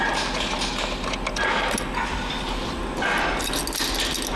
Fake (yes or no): no